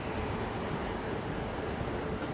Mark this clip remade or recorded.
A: recorded